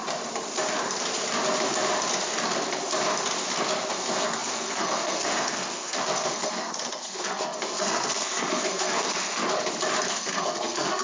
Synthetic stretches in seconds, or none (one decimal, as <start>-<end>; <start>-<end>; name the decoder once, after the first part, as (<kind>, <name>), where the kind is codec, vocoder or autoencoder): 3.9-9.4 (codec, SNAC); 10.1-11.0